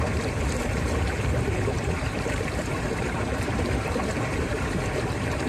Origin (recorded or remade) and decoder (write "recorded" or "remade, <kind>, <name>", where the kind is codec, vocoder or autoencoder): remade, vocoder, BigVGAN v2